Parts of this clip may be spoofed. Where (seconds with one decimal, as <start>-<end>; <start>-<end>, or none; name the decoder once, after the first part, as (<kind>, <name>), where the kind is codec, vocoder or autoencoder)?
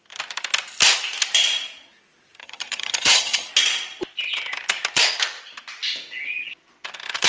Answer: 2.4-3.5 (vocoder, HiFi-GAN)